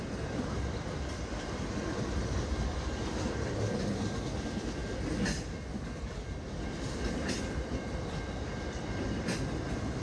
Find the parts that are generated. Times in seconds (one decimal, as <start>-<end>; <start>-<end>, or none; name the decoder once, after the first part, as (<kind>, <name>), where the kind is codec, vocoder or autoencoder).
0.0-4.8 (vocoder, BigVGAN v2); 5.7-10.0